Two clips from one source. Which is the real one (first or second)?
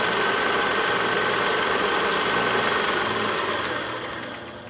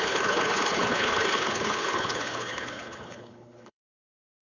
first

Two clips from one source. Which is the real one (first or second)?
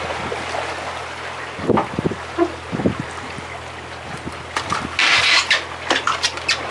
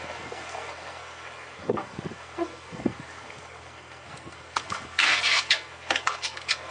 first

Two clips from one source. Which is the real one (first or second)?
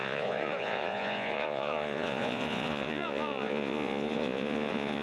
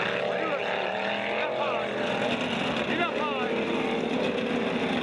second